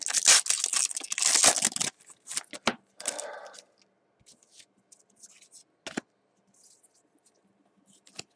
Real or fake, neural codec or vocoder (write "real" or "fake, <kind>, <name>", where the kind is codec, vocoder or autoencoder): real